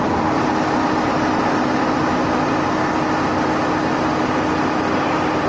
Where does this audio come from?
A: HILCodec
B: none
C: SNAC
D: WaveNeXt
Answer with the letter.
B